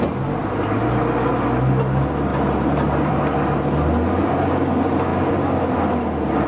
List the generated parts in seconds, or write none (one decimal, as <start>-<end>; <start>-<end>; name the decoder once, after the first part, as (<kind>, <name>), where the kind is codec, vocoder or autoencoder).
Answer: 2.3-3.1 (vocoder, BigVGAN v2)